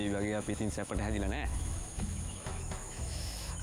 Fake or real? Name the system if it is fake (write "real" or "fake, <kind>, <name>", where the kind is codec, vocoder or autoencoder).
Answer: fake, autoencoder, DAC-VAE